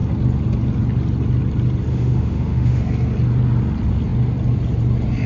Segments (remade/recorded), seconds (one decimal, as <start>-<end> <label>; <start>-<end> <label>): 0.0-1.9 recorded; 1.9-2.8 remade; 2.8-5.3 recorded